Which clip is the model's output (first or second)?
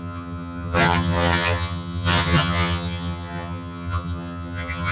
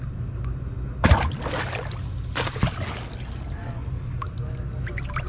first